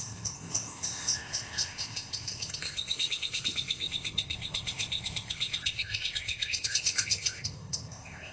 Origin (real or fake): fake